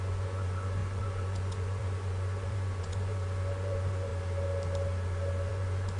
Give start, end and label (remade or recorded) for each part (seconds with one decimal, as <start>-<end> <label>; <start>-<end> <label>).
0.0-4.1 remade; 4.1-5.5 recorded; 5.5-6.0 remade